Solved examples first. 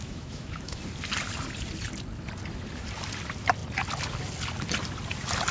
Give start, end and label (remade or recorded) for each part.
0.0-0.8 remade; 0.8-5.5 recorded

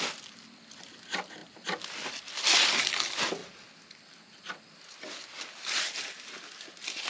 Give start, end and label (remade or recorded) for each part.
0.0-7.1 recorded

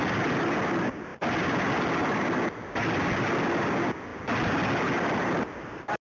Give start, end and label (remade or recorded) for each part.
0.0-6.0 recorded

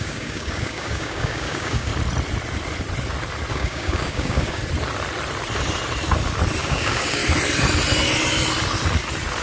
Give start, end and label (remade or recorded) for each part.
0.0-1.9 remade; 1.9-3.5 recorded; 3.5-4.6 remade; 4.6-6.6 recorded; 6.6-7.2 remade; 7.2-9.4 recorded